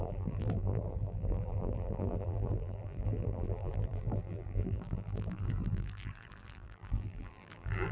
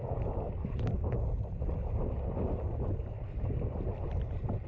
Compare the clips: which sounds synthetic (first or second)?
first